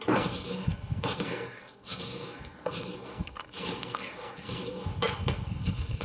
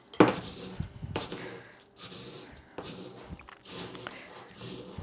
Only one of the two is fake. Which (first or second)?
first